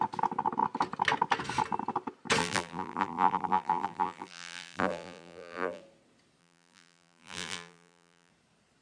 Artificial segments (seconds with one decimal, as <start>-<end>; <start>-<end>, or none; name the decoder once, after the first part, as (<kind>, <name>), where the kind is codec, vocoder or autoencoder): 2.4-5.8 (vocoder, BigVGAN v2); 6.4-8.3